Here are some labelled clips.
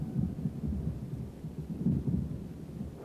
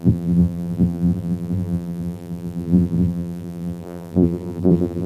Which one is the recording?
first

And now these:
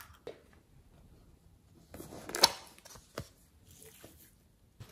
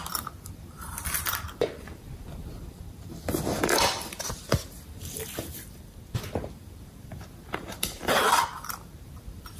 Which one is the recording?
first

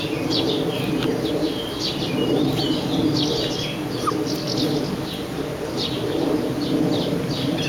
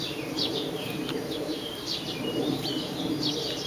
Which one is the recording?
first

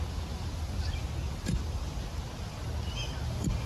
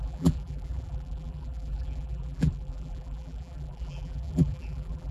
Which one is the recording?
first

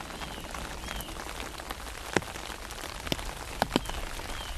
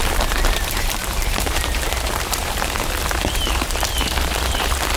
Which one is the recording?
first